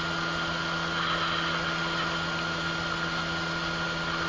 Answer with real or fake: real